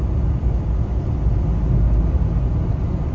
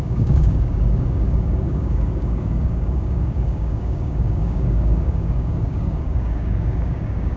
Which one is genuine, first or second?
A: first